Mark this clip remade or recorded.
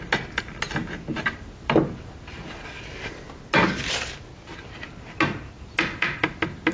recorded